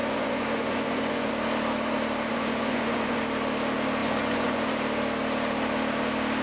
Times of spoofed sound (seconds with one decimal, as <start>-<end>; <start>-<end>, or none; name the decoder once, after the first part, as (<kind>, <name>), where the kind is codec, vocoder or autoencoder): 0.0-1.3 (vocoder, Vocos); 2.3-3.2; 4.0-4.7